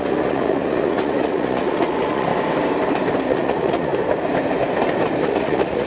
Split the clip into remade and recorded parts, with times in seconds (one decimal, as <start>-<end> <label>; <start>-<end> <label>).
0.0-2.3 remade; 2.3-3.2 recorded; 3.2-3.9 remade; 3.9-5.2 recorded; 5.2-5.9 remade